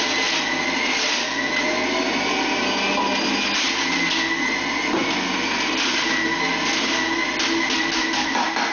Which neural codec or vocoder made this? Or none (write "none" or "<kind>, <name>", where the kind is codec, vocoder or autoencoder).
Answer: none